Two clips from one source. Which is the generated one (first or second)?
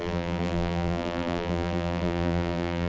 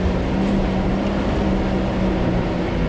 first